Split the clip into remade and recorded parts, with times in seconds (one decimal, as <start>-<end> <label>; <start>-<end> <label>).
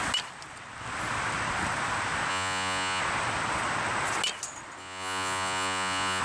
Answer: 0.0-2.3 recorded; 2.3-3.0 remade; 3.0-4.8 recorded; 4.8-6.2 remade